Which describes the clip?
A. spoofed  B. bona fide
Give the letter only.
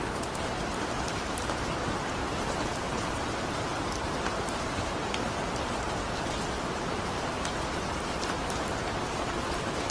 B